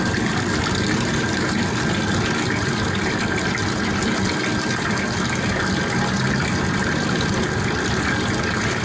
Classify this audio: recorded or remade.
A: recorded